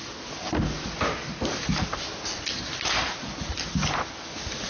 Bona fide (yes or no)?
yes